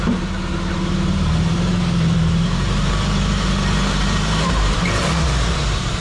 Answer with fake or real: fake